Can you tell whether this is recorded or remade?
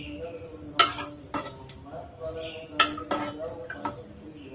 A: recorded